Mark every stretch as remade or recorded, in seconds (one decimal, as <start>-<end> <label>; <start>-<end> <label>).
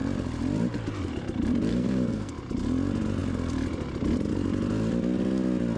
0.0-1.7 recorded; 1.7-2.3 remade; 2.3-5.8 recorded